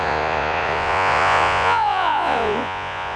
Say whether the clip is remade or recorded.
remade